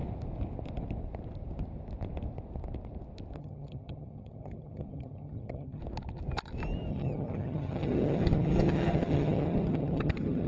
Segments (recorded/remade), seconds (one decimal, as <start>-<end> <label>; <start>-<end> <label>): 0.0-3.4 recorded; 3.4-5.8 remade; 5.8-6.9 recorded; 6.9-10.5 remade